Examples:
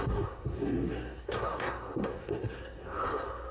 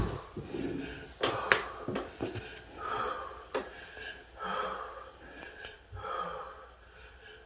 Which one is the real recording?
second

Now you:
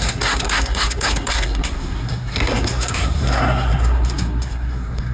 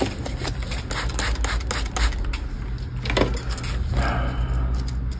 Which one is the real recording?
second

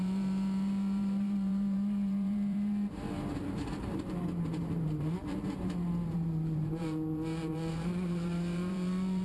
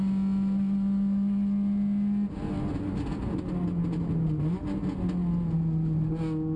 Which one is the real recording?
second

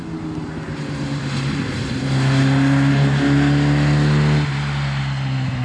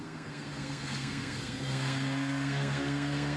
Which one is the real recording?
first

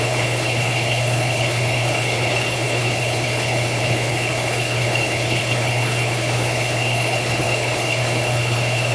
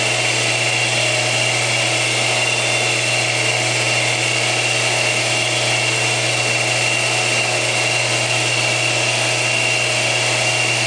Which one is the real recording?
second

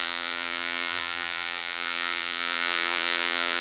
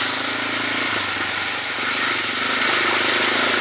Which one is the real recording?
second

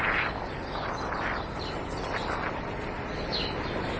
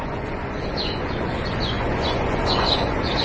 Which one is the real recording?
first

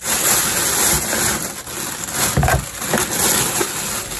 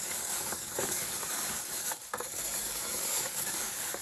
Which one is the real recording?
first